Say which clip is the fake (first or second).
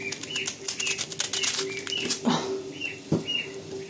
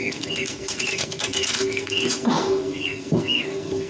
second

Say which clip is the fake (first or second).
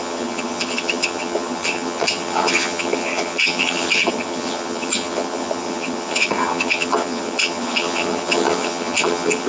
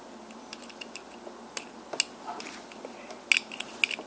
first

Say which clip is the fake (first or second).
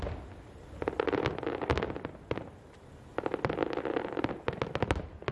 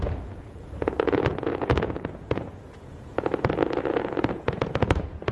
second